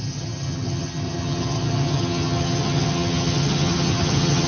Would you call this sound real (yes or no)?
no